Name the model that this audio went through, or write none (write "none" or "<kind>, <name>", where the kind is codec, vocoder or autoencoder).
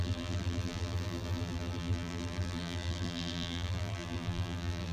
vocoder, BigVGAN v2